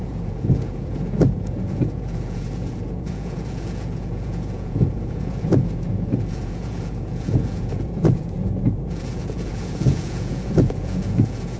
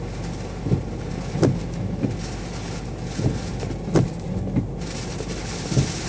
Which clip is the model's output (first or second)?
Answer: first